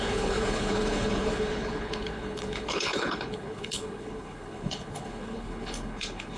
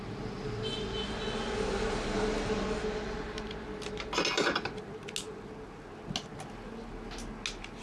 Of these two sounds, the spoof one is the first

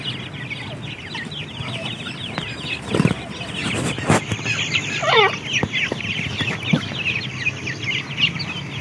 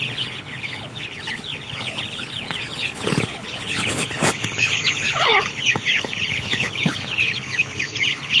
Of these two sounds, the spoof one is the second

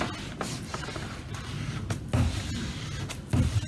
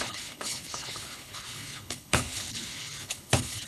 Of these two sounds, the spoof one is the second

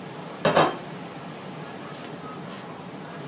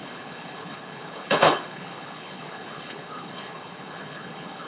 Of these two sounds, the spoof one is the second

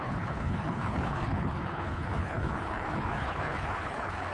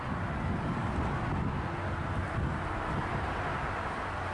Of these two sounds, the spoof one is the first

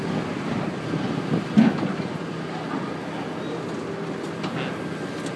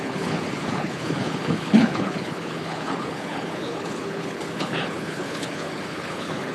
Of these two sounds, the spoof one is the second